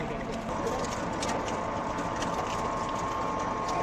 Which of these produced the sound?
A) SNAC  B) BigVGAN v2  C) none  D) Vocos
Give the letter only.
C